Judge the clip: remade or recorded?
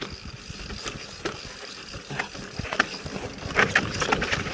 recorded